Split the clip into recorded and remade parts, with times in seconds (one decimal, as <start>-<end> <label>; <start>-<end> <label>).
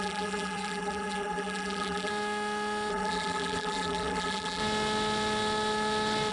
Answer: 0.0-2.1 remade; 2.1-2.9 recorded; 2.9-4.6 remade; 4.6-6.3 recorded